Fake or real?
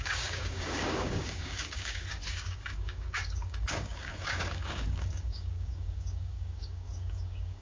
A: fake